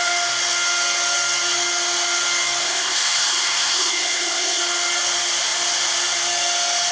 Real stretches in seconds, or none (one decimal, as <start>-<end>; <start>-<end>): 0.0-2.6; 4.6-6.9